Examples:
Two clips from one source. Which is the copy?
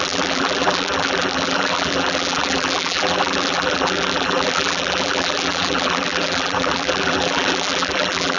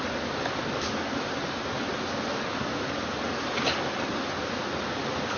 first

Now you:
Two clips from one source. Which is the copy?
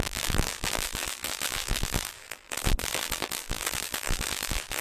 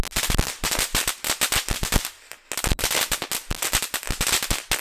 first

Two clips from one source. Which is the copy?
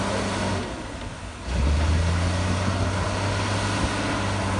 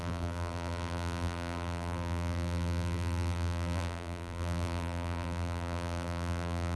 second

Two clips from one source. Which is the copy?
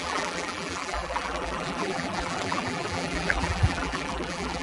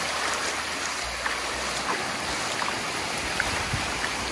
first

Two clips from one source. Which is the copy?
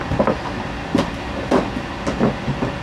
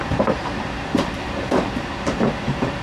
second